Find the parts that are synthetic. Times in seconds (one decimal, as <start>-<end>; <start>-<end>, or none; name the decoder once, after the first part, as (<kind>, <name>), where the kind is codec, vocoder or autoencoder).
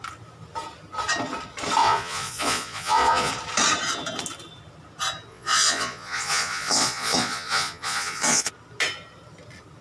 1.8-3.3 (vocoder, Vocos); 5.3-8.5